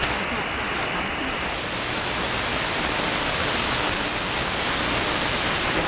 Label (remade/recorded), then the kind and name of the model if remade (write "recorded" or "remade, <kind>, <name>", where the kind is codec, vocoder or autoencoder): recorded